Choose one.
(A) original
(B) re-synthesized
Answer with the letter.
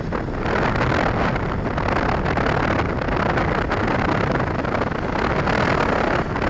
A